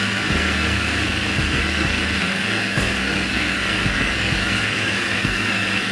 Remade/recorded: remade